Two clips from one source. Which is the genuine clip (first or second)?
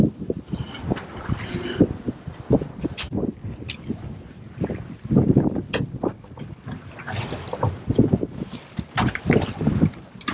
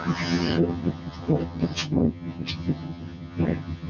first